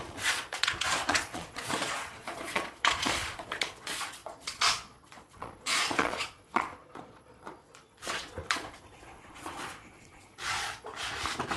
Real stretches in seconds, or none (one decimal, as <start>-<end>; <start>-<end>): 10.9-11.6